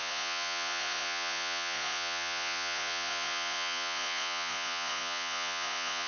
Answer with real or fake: fake